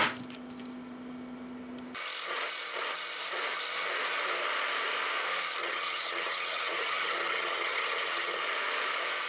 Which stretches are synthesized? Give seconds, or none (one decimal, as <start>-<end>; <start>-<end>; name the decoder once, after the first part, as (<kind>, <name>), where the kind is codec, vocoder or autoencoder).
5.6-8.4 (vocoder, HiFi-GAN)